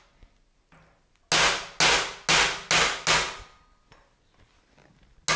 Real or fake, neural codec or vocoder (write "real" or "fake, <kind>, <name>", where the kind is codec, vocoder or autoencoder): real